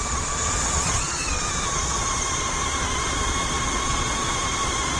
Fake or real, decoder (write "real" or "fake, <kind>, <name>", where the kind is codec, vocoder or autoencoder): fake, vocoder, Vocos